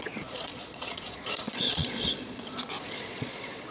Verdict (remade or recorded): remade